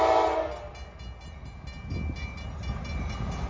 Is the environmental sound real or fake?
real